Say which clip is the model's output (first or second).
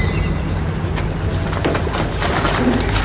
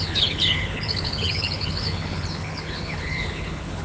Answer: second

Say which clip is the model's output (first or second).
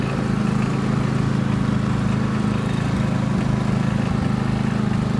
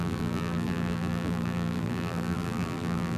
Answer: second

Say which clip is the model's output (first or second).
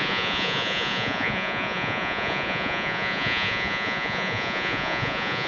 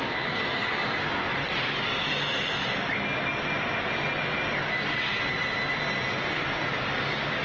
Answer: first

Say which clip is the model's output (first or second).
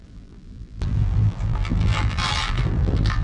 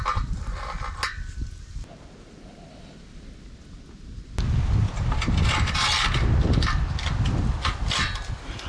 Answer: first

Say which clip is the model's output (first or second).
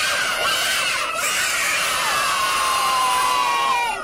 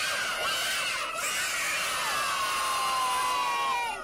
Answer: first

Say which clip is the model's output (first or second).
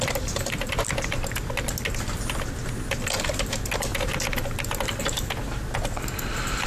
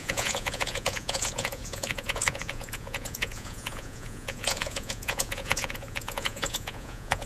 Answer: second